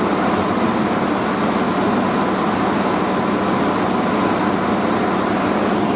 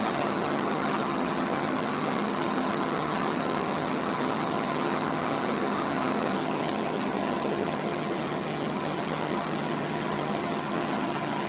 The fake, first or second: second